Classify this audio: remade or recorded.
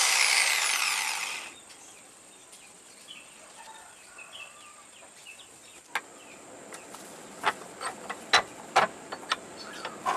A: recorded